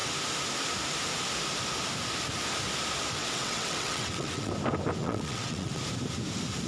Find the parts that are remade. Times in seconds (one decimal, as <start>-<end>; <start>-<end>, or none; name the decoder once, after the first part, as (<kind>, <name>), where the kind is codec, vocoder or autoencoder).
3.2-4.5 (vocoder, WaveNeXt); 5.0-5.8